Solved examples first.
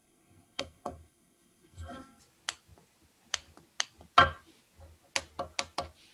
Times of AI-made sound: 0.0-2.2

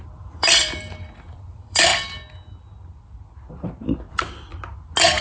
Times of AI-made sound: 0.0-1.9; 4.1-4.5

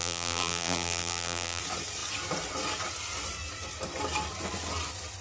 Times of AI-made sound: 0.0-1.6